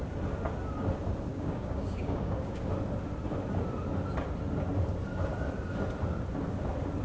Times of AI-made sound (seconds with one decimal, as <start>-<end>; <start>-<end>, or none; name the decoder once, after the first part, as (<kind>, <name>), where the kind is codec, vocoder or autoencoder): 1.3-2.7 (codec, DAC)